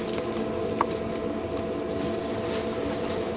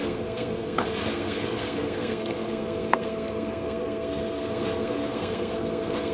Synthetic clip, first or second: second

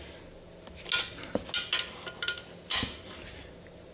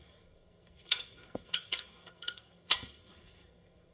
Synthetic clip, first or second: second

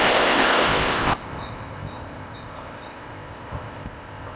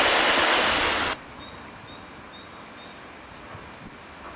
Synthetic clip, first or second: first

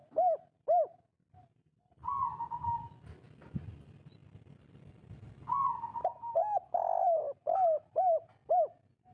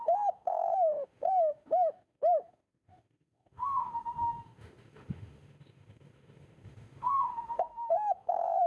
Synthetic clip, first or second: second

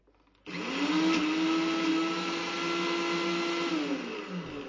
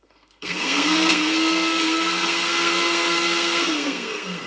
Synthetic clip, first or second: second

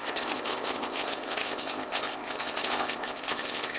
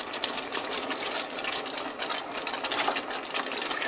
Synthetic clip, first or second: first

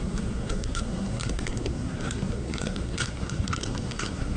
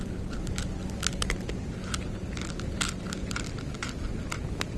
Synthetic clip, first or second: first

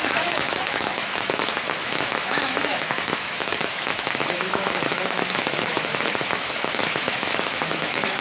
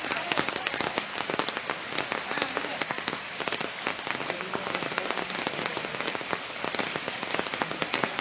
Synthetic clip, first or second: first